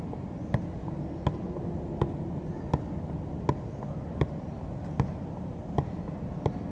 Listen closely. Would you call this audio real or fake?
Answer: real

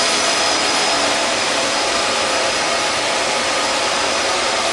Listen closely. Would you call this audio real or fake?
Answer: real